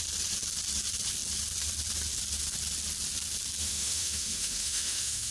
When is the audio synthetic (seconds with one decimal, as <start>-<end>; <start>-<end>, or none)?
3.6-5.3